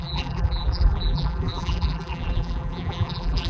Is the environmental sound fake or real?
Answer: fake